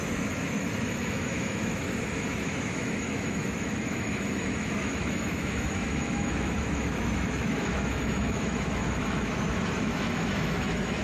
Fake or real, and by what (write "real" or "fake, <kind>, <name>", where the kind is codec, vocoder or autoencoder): fake, autoencoder, DAC-VAE